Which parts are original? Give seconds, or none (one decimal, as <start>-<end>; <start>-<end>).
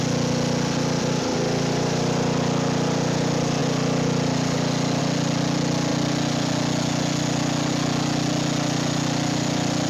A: 0.0-9.9